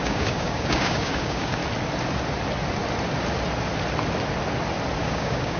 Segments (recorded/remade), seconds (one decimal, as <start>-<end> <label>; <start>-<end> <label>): 0.0-1.6 remade; 1.6-5.0 recorded; 5.0-5.6 remade